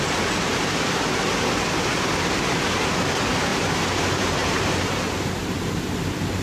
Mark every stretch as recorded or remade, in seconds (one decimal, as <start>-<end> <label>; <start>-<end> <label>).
0.0-3.5 recorded; 3.5-4.0 remade; 4.0-4.4 recorded; 4.4-5.0 remade; 5.0-6.4 recorded